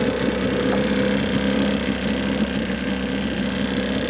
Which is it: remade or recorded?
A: recorded